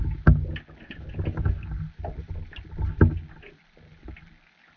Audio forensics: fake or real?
real